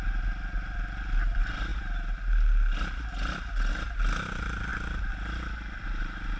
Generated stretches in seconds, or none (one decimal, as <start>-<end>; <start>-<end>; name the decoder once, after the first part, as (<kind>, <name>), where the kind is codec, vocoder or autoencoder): none